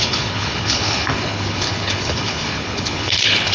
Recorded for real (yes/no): no